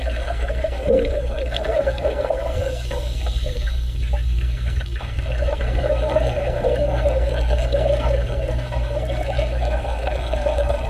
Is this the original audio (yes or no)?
no